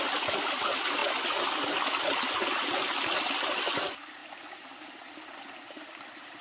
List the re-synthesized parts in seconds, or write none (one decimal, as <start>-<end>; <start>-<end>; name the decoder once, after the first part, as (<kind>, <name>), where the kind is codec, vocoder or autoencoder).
none